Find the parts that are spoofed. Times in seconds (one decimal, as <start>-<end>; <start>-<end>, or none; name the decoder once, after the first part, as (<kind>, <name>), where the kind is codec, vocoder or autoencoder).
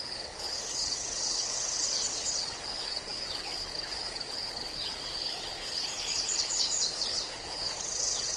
0.0-8.4 (codec, HILCodec)